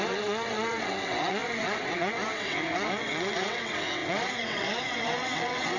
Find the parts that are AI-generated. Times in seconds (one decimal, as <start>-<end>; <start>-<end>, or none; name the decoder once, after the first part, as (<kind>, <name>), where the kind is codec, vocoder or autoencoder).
0.0-5.8 (vocoder, WaveNeXt)